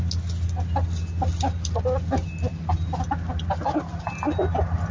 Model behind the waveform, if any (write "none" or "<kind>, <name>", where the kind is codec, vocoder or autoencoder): none